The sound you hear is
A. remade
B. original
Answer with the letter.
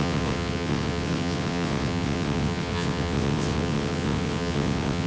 A